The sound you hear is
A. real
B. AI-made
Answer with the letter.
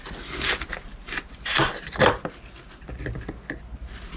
A